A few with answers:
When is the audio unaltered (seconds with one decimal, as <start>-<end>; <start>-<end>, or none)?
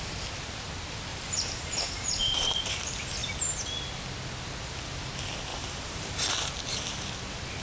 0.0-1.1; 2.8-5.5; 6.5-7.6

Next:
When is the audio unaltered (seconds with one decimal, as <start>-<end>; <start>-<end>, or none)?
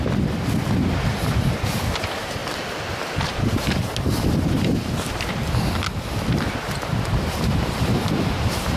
2.4-6.9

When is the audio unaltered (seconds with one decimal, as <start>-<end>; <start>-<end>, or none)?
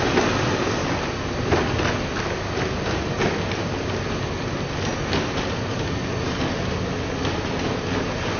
0.0-8.4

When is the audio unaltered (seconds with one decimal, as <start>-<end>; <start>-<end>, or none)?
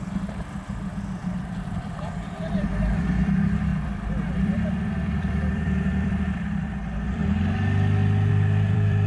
7.2-8.3